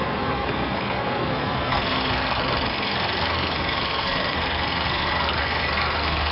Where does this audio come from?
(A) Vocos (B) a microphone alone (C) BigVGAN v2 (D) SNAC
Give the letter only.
D